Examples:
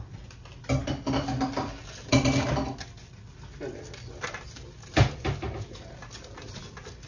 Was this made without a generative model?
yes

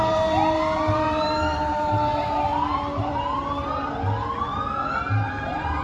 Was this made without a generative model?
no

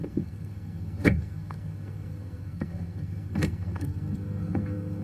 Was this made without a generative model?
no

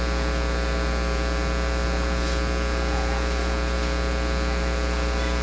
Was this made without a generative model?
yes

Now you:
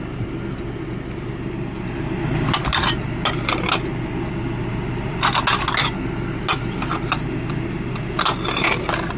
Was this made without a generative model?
yes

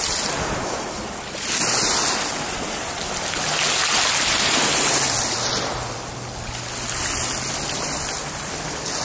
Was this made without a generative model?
yes